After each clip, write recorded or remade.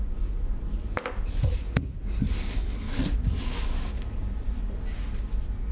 recorded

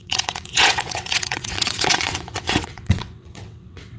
remade